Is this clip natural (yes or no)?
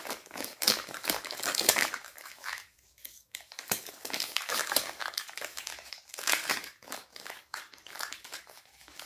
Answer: no